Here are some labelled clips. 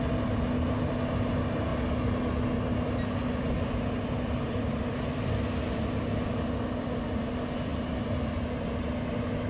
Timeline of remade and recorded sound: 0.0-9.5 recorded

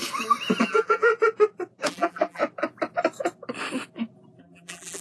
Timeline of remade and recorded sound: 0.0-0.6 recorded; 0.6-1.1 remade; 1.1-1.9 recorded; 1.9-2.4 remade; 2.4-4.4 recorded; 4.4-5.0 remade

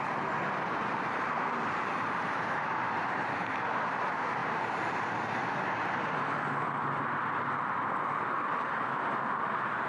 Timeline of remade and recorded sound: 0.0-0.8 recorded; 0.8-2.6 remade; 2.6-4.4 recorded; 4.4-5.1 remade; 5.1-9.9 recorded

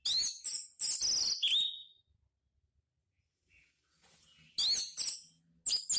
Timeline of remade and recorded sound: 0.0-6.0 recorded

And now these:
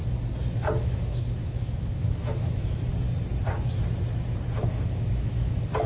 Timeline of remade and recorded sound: 0.0-0.8 recorded; 0.8-2.9 remade; 2.9-4.6 recorded; 4.6-5.9 remade